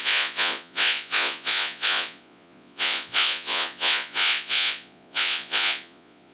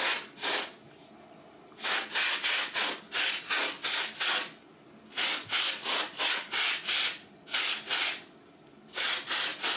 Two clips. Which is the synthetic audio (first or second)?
first